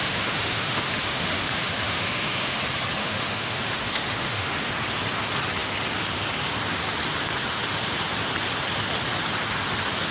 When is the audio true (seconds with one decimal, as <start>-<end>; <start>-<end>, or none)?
2.6-3.0; 4.7-10.1